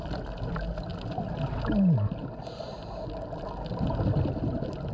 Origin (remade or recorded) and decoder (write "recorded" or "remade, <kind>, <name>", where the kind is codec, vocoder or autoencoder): recorded